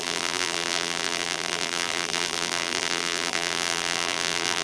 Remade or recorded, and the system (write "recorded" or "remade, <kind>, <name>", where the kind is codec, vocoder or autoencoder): remade, vocoder, BigVGAN v2